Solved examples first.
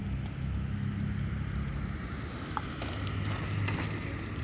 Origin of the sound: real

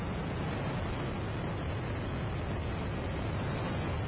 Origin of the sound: real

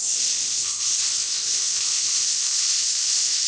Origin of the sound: fake